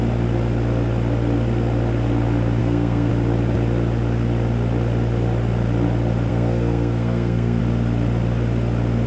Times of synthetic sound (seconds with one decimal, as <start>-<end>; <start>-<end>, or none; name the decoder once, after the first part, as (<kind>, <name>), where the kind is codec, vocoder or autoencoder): 2.6-3.1 (codec, SNAC); 6.3-7.6